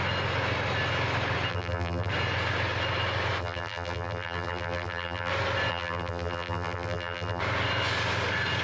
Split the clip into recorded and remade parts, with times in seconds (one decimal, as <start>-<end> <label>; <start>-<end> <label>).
0.0-1.5 recorded; 1.5-2.1 remade; 2.1-3.4 recorded; 3.4-5.3 remade; 5.3-5.7 recorded; 5.7-7.4 remade; 7.4-8.6 recorded